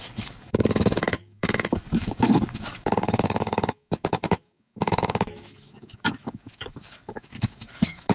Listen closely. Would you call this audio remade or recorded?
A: remade